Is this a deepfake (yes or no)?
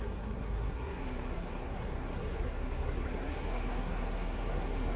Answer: yes